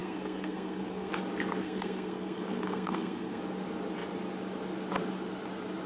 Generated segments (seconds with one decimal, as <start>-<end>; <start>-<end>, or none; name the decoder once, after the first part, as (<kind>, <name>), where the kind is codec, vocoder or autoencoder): 0.0-1.1 (codec, SNAC); 1.6-3.4